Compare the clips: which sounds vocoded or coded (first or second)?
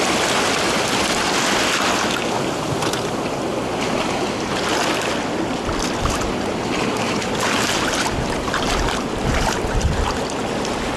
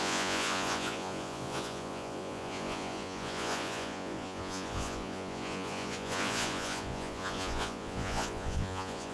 second